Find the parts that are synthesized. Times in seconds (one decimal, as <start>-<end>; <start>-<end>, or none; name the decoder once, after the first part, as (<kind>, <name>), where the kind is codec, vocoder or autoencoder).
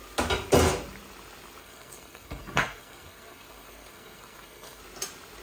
1.6-4.8 (codec, SNAC)